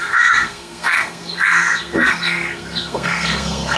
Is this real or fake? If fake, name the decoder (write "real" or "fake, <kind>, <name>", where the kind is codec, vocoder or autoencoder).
fake, codec, SNAC